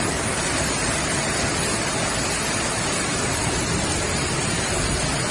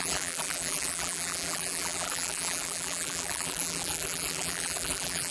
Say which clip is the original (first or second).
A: first